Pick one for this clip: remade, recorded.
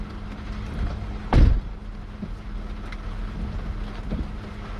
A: recorded